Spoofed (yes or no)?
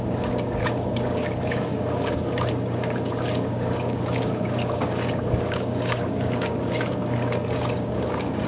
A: yes